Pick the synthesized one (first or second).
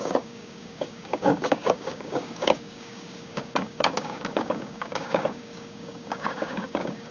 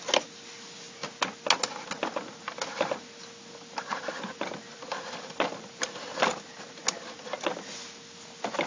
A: first